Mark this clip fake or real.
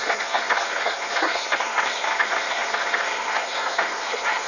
fake